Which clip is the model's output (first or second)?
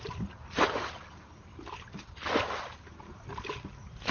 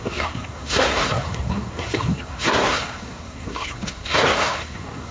second